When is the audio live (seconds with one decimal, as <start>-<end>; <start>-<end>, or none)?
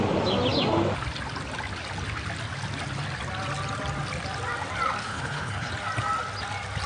0.0-5.0; 5.7-6.9